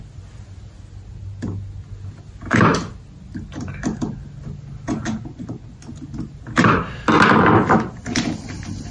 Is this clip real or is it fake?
real